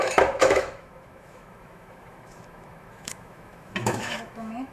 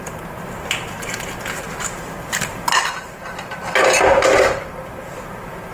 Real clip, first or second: second